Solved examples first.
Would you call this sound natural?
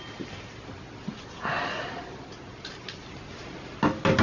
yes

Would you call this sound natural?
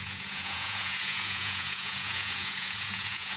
no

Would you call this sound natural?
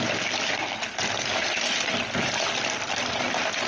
yes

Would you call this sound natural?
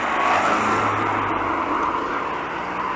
yes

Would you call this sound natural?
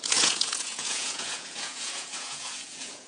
no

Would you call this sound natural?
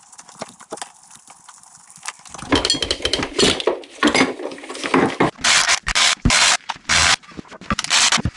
yes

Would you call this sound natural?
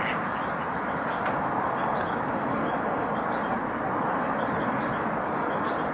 yes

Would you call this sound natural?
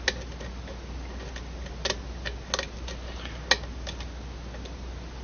yes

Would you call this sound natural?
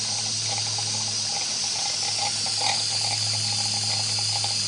yes